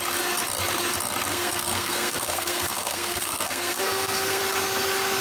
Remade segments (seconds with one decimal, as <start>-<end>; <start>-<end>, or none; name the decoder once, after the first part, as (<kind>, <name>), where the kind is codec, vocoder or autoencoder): 1.3-4.4 (codec, SNAC)